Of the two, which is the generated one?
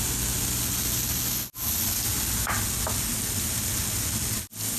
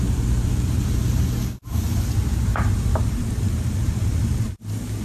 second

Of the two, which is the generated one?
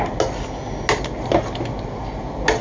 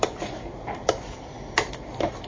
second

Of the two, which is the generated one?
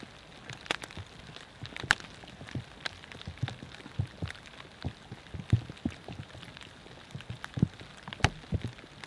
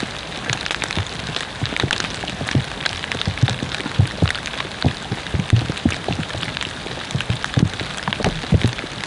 second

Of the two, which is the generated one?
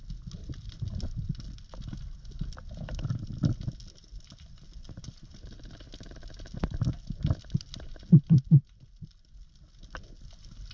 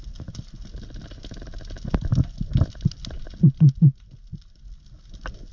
first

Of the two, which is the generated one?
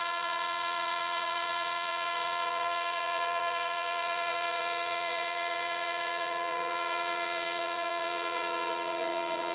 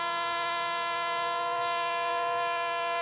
first